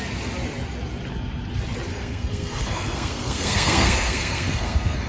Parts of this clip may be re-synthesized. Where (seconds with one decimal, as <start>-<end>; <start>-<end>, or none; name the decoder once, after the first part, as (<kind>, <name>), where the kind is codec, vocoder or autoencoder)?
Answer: 1.9-5.1 (codec, SNAC)